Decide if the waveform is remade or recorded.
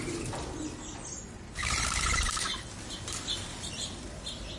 recorded